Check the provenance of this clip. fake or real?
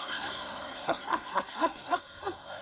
fake